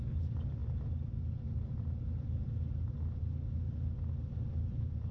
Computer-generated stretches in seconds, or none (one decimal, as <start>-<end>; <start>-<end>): none